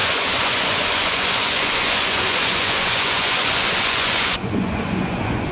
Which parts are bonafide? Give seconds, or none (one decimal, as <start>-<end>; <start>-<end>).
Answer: none